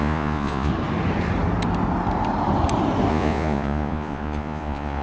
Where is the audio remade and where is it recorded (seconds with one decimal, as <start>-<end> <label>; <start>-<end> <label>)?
0.0-0.7 remade; 0.7-3.1 recorded; 3.1-5.0 remade